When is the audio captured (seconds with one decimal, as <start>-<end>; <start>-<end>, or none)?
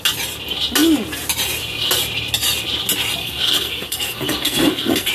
0.0-3.2